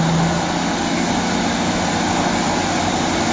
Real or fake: real